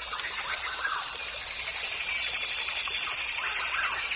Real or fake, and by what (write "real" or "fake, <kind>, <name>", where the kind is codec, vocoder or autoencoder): real